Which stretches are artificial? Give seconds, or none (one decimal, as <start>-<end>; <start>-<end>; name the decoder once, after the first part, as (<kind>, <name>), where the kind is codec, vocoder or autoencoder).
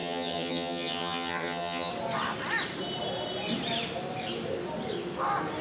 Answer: 0.0-1.9 (vocoder, HiFi-GAN)